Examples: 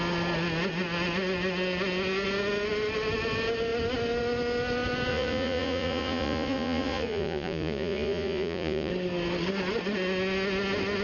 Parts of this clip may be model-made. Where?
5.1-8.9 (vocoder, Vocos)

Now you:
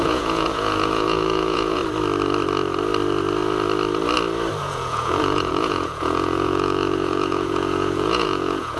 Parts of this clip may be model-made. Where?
0.0-1.8 (vocoder, Vocos); 4.6-8.8

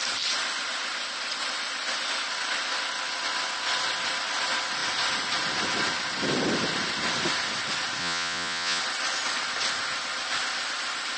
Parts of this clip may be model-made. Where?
8.0-8.8 (vocoder, Vocos)

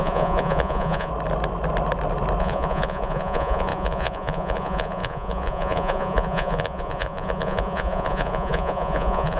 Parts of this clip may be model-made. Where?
0.0-1.1 (vocoder, Vocos); 2.4-9.4

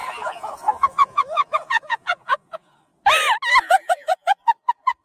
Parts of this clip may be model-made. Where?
0.0-2.9 (vocoder, Vocos); 3.6-5.0

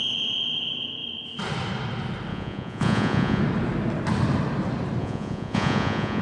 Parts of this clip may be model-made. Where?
2.3-3.4 (vocoder, Vocos); 5.0-6.2